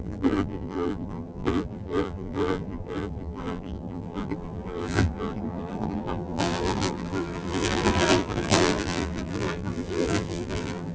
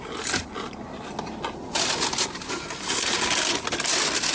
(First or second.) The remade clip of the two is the first